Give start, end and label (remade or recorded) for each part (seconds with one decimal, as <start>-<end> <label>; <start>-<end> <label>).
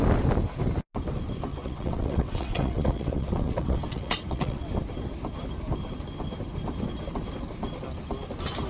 0.0-1.5 recorded; 1.5-4.7 remade; 4.7-8.7 recorded